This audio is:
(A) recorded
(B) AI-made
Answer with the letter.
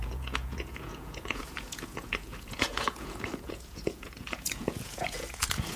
B